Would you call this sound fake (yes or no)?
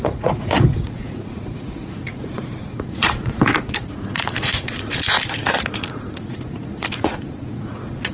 yes